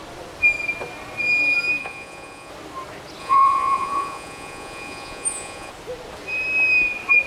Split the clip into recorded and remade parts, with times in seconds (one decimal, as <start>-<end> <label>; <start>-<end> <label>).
0.0-1.8 recorded; 1.8-2.5 remade; 2.5-3.2 recorded; 3.2-5.7 remade; 5.7-7.3 recorded